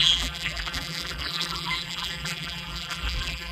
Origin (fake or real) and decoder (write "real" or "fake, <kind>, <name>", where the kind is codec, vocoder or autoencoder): fake, vocoder, BigVGAN v2